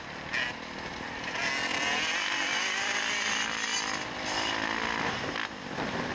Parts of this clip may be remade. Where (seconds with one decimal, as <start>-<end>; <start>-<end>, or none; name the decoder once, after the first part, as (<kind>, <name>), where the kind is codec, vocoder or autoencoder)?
1.7-4.9 (vocoder, BigVGAN v2)